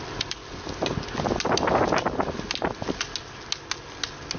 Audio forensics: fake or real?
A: real